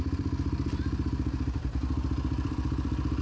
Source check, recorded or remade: remade